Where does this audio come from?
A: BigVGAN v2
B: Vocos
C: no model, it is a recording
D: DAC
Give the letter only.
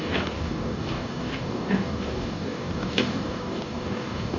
D